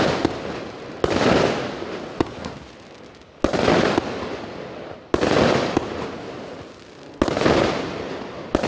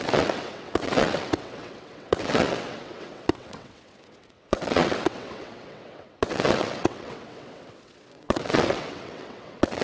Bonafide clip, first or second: first